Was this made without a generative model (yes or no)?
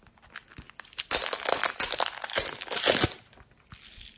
yes